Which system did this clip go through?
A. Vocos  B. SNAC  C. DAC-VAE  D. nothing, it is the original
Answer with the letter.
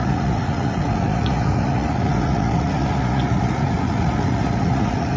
A